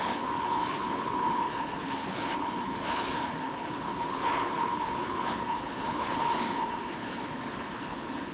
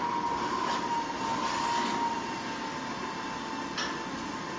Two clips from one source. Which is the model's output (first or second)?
first